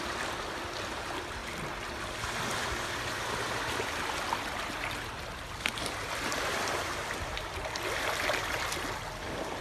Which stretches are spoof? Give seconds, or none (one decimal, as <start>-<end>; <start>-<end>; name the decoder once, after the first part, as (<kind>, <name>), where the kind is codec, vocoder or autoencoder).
none